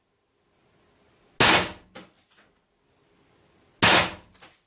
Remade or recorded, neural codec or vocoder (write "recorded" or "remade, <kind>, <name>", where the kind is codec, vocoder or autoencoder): recorded